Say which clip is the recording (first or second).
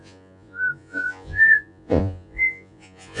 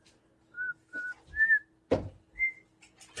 second